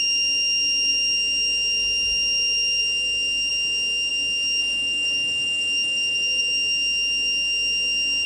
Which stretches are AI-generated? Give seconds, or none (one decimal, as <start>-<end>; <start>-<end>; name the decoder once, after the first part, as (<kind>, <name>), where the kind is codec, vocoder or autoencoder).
4.6-6.4 (autoencoder, DAC-VAE)